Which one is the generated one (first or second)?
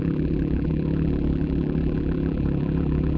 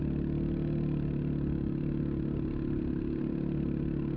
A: first